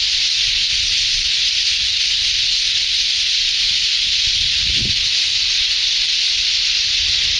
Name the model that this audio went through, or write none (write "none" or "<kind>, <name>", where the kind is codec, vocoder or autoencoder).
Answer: none